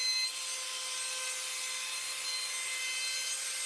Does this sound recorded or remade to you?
recorded